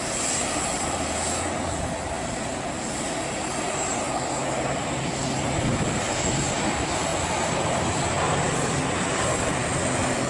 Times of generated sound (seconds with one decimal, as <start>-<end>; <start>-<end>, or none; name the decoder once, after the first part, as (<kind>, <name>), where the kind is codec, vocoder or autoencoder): none